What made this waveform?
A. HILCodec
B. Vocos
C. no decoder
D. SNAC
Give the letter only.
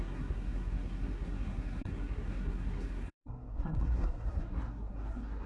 D